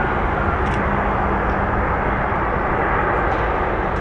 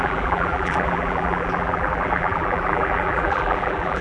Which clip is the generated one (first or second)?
second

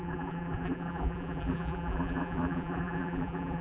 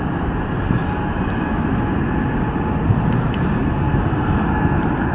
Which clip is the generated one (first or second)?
first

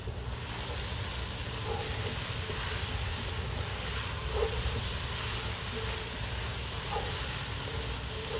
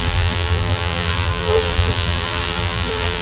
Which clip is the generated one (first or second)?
second